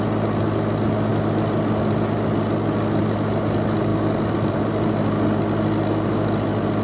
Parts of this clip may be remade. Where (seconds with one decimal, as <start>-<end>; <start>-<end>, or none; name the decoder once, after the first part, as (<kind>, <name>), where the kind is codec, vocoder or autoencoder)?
none